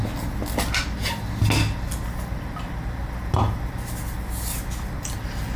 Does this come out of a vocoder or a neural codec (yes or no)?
no